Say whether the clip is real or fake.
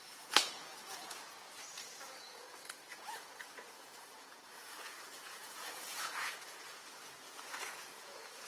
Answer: fake